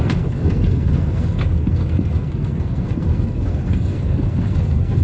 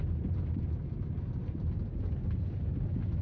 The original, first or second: second